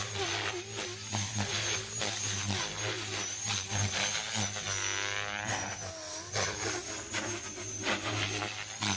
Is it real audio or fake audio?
real